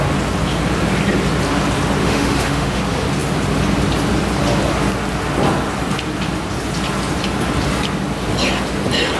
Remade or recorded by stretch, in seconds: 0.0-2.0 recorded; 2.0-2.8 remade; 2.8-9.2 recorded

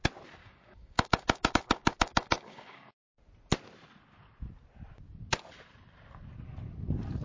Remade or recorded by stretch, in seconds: 0.0-0.4 recorded; 0.4-3.1 remade; 3.1-7.2 recorded

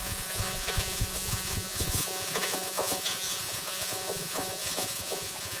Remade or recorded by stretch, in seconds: 0.0-5.6 remade

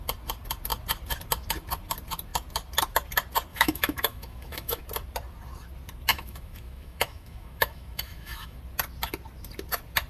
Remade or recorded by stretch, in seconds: 0.0-3.5 recorded; 3.5-4.8 remade; 4.8-6.1 recorded; 6.1-8.6 remade; 8.6-10.1 recorded

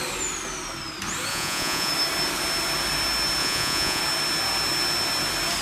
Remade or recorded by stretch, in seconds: 0.0-1.3 recorded; 1.3-1.9 remade; 1.9-3.4 recorded; 3.4-4.0 remade; 4.0-5.6 recorded